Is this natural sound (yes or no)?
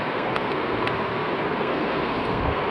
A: no